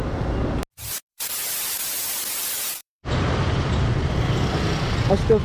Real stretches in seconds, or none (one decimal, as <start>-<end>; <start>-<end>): 0.0-1.1; 1.8-2.8; 4.5-5.4